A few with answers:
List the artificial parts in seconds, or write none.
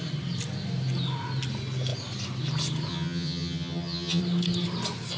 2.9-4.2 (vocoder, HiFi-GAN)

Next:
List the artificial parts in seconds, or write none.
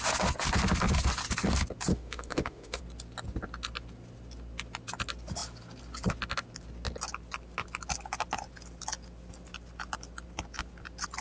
1.9-2.8 (autoencoder, DAC-VAE)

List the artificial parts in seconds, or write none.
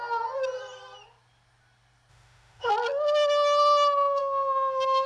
2.1-2.7 (autoencoder, DAC-VAE); 4.2-5.1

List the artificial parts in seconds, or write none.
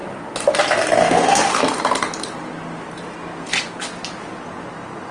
1.0-1.6 (autoencoder, DAC-VAE)